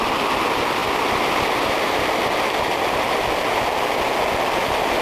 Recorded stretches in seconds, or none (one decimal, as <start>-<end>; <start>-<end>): 0.0-0.8; 3.0-5.0